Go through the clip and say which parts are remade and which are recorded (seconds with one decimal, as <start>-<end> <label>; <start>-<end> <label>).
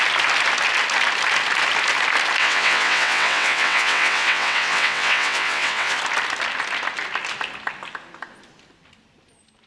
0.0-2.4 recorded; 2.4-6.0 remade; 6.0-9.7 recorded